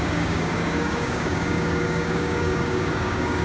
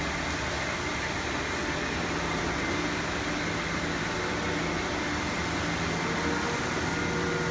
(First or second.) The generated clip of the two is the first